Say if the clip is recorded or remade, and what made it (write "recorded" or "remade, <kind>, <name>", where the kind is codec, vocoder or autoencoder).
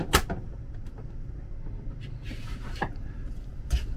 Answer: recorded